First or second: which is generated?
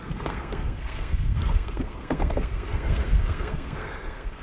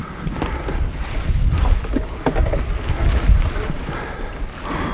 first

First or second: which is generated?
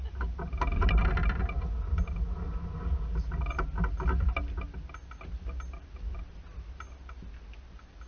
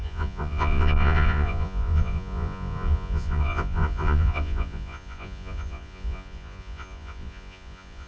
second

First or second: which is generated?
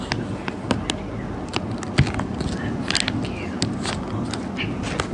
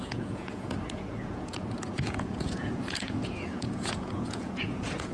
second